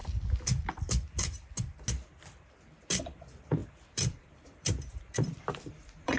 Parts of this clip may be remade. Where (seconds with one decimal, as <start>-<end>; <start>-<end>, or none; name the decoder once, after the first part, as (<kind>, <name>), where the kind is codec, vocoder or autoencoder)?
3.0-6.2 (vocoder, BigVGAN v2)